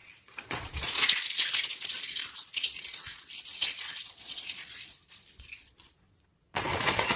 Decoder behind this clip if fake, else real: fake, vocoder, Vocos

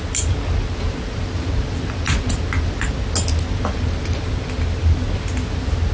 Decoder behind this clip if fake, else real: real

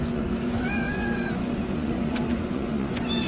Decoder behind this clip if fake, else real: fake, vocoder, Vocos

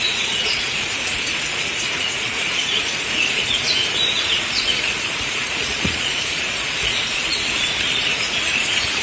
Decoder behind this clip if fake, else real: fake, vocoder, Vocos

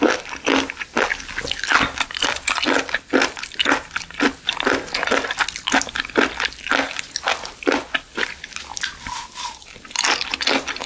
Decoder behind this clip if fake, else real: real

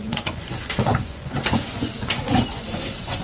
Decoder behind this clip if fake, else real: fake, vocoder, Vocos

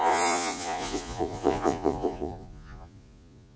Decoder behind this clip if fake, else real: fake, vocoder, Vocos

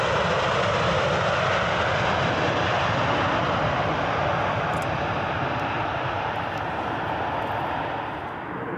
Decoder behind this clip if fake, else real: real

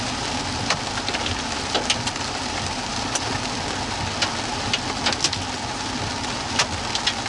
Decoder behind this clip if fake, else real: real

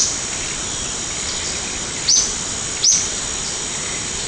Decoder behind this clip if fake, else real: real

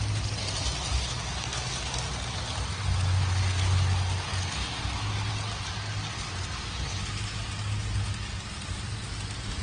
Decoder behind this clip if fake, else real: real